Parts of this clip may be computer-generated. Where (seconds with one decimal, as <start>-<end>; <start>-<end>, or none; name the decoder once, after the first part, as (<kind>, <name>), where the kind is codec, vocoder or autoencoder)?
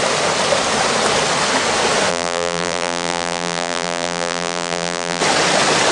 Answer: 2.1-5.2 (vocoder, BigVGAN v2)